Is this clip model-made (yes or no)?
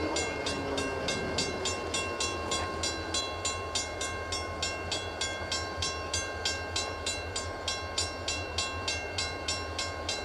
no